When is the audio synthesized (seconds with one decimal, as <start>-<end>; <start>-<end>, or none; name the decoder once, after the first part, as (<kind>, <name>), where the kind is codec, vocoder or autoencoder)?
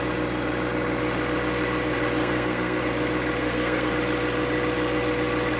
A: 2.2-2.8 (codec, SNAC); 3.4-3.9